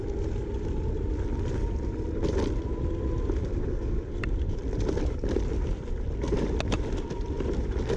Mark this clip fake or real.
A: real